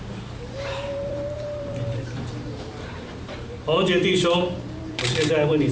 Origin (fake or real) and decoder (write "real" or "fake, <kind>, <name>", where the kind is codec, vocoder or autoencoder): fake, vocoder, BigVGAN v2